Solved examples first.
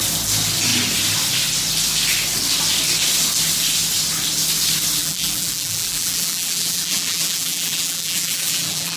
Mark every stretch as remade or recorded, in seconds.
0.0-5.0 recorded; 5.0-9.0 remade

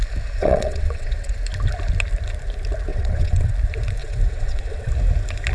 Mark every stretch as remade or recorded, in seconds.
0.0-0.4 recorded; 0.4-1.3 remade; 1.3-2.9 recorded; 2.9-3.5 remade; 3.5-4.0 recorded; 4.0-4.9 remade; 4.9-5.5 recorded

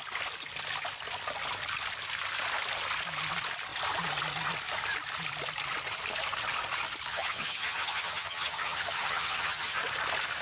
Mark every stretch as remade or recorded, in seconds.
0.0-7.1 recorded; 7.1-9.8 remade; 9.8-10.4 recorded